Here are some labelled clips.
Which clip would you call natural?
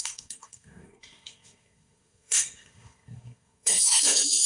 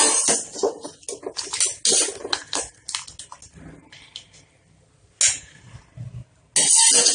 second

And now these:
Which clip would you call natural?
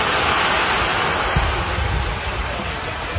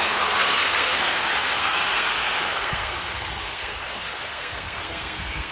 first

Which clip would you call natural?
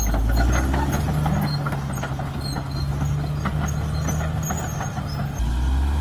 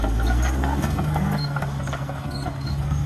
first